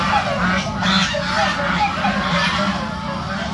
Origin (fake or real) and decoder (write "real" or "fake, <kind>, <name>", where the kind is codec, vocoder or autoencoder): real